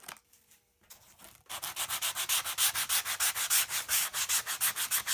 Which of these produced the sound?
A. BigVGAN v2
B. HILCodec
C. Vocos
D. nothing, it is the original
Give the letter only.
D